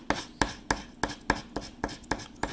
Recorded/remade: recorded